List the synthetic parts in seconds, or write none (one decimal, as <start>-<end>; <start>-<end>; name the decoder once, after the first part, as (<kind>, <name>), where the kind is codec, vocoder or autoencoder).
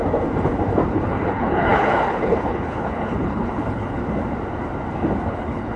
0.9-4.0 (codec, HILCodec); 5.3-5.8